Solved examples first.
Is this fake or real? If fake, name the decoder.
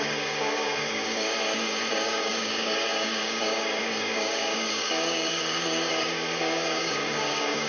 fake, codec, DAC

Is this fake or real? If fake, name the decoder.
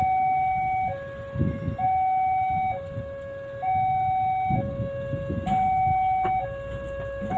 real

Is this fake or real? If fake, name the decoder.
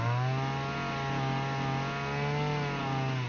real